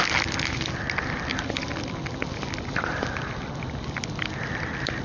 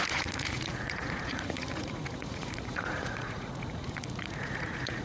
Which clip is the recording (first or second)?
first